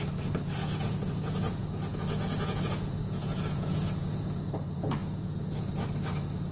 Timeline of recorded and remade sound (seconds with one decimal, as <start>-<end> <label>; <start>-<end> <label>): 0.0-0.6 recorded; 0.6-4.5 remade; 4.5-5.0 recorded; 5.0-5.7 remade; 5.7-6.5 recorded